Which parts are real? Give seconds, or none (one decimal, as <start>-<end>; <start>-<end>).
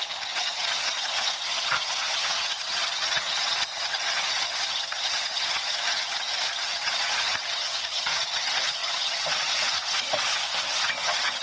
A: none